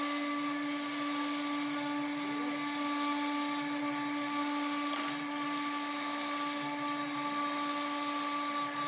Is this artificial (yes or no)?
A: no